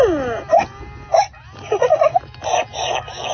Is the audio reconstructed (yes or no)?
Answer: no